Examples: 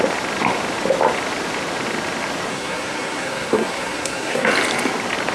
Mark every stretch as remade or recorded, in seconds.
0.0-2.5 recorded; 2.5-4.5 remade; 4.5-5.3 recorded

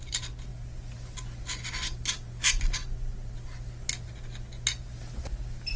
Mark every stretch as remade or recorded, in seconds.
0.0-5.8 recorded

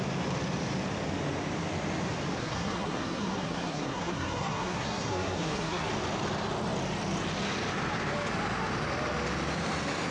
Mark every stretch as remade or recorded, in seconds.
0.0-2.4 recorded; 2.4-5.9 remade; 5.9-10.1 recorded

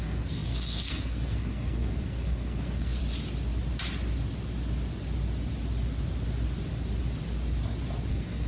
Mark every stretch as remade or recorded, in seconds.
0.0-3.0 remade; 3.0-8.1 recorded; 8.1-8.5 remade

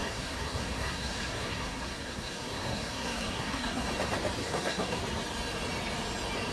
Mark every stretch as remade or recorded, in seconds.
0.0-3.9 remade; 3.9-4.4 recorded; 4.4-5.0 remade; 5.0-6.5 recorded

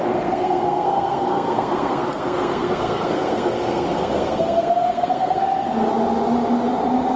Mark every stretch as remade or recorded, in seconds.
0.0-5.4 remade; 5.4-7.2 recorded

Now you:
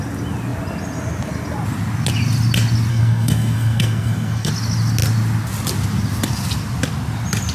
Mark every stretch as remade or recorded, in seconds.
0.0-2.9 recorded; 2.9-4.5 remade; 4.5-7.5 recorded